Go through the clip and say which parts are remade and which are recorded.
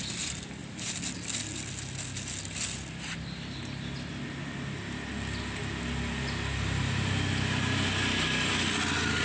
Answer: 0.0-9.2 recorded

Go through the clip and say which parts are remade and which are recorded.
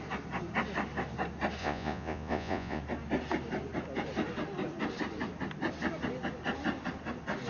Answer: 0.0-1.6 recorded; 1.6-2.8 remade; 2.8-7.5 recorded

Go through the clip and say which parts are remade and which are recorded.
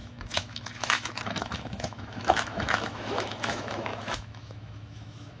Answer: 0.0-5.4 remade